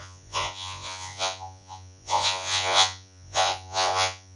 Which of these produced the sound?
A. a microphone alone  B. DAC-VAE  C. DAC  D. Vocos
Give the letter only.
D